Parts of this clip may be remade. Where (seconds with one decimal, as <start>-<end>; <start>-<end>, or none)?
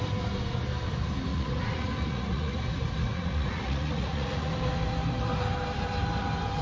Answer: 1.3-2.6; 3.1-4.5